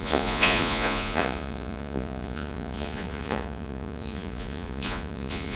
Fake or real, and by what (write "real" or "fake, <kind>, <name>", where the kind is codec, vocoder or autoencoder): fake, vocoder, Vocos